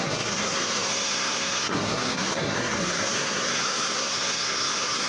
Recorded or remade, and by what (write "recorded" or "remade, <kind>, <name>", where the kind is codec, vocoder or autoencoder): remade, codec, SNAC